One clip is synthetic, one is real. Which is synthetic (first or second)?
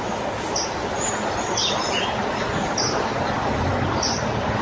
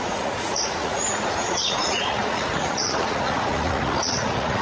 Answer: second